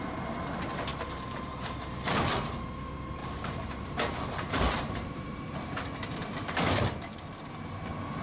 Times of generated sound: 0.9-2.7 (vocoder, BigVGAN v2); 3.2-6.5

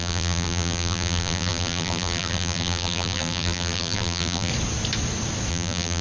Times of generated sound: 0.0-4.5 (vocoder, BigVGAN v2); 5.5-6.0

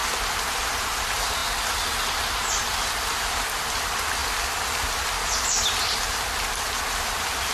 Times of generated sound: 0.5-1.4 (vocoder, BigVGAN v2); 3.5-7.5

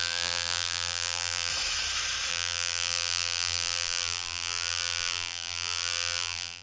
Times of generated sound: 0.0-1.5 (vocoder, BigVGAN v2); 2.3-6.6

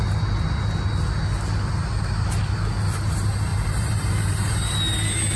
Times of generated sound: 3.5-4.5 (vocoder, BigVGAN v2)

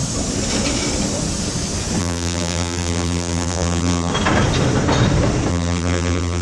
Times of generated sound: 2.0-4.1 (vocoder, BigVGAN v2); 5.5-6.4

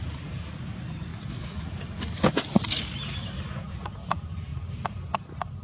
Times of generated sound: 0.0-1.1 (vocoder, BigVGAN v2); 1.6-4.5; 5.1-5.6

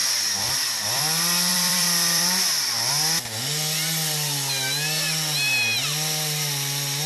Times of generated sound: 0.0-1.0 (vocoder, BigVGAN v2); 1.5-2.9